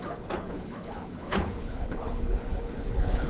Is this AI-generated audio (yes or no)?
yes